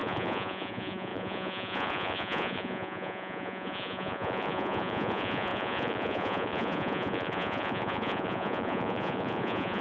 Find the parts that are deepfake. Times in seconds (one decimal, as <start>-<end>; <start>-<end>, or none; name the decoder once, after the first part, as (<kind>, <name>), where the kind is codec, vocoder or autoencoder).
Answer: 0.0-9.8 (vocoder, Vocos)